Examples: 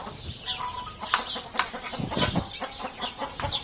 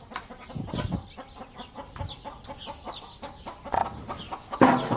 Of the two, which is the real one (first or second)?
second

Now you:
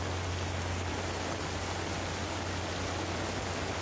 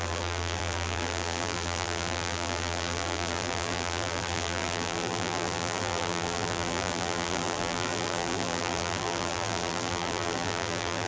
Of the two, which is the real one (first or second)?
first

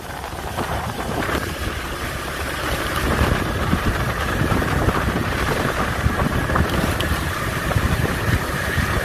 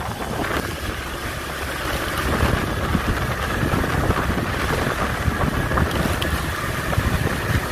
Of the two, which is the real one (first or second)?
second